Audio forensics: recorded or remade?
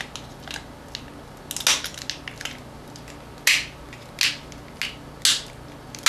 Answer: recorded